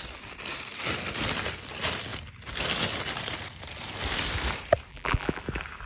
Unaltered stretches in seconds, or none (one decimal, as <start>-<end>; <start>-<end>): 0.0-4.9; 5.4-5.9